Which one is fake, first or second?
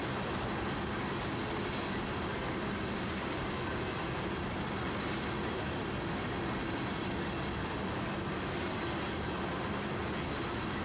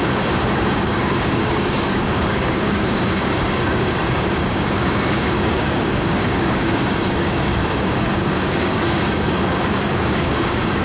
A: second